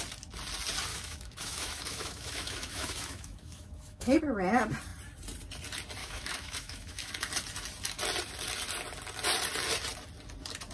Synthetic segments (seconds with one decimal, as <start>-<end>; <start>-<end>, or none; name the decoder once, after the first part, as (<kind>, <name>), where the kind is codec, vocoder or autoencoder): 0.9-4.2 (autoencoder, DAC-VAE); 6.0-7.1